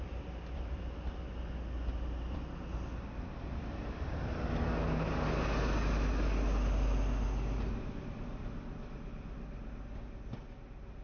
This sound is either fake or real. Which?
real